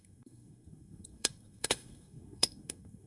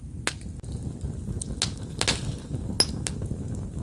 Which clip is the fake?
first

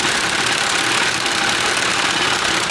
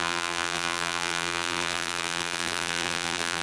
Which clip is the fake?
second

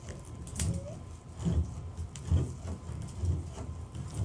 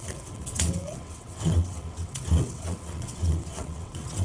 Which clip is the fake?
second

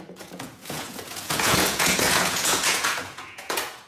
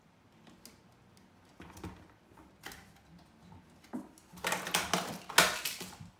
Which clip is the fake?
first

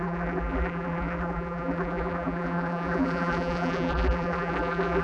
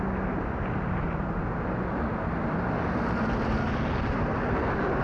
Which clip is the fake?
first